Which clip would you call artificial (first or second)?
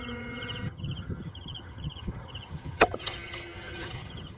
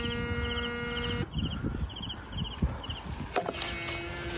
first